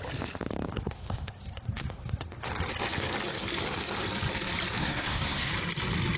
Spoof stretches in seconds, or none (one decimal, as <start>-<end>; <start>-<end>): 0.7-2.5; 4.8-5.5